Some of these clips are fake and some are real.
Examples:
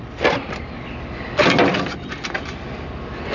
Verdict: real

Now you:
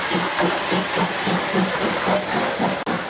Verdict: real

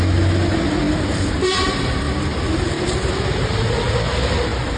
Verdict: real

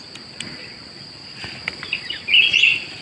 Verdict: fake